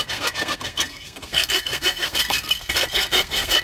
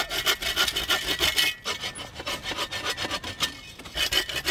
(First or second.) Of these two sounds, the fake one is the first